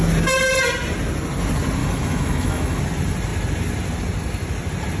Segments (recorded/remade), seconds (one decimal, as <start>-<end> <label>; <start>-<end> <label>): 0.0-1.8 recorded; 1.8-2.8 remade; 2.8-5.0 recorded